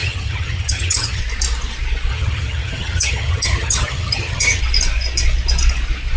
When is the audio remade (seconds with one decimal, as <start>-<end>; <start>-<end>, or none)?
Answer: 0.0-1.2; 2.1-4.6